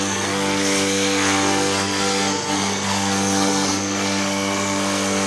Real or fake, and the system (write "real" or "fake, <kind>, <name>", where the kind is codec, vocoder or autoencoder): fake, codec, SNAC